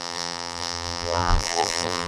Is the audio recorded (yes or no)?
no